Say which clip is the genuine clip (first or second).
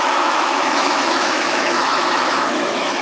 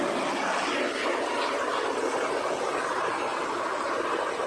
second